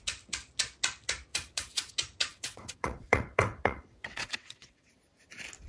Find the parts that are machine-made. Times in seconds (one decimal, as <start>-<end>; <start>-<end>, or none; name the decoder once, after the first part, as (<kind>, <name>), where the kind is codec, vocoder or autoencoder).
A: 1.3-1.9 (vocoder, WaveNeXt); 2.3-4.9